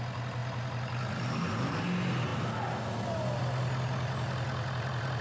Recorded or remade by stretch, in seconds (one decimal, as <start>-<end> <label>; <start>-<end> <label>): 0.0-5.2 recorded